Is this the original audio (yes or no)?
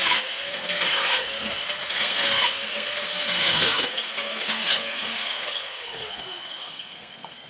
no